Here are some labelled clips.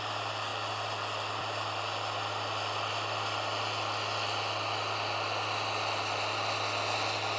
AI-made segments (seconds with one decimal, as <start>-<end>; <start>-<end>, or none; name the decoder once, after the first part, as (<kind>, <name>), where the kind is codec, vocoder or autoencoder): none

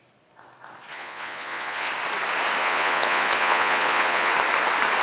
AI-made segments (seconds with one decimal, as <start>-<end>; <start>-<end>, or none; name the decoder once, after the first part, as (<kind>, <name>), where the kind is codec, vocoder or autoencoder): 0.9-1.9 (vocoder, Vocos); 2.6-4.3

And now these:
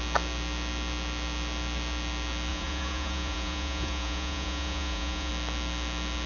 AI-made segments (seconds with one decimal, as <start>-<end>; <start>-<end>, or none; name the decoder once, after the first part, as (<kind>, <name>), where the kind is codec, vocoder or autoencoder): 2.5-5.3 (vocoder, Vocos)

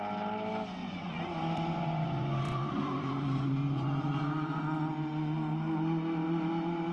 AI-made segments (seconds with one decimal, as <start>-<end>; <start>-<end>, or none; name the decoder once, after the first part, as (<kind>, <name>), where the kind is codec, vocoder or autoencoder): 0.8-4.9 (vocoder, Vocos)

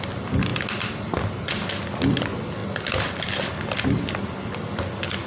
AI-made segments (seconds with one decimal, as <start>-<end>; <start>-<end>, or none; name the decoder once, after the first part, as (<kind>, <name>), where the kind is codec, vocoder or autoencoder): none

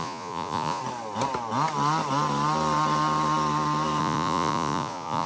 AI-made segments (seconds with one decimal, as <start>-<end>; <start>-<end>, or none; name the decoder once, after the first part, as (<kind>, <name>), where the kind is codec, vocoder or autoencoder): 0.0-0.8 (vocoder, Vocos); 4.0-5.3

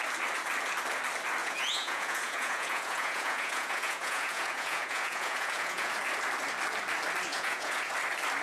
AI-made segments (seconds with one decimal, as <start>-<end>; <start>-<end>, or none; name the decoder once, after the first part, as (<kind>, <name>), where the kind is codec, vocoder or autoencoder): 1.4-5.9 (vocoder, Vocos); 7.3-7.9

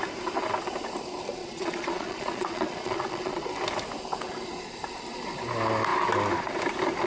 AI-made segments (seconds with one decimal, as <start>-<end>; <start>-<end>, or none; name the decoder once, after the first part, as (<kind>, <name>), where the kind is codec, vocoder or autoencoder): 1.4-3.4 (vocoder, Vocos)